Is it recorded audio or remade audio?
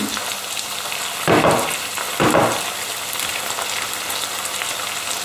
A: recorded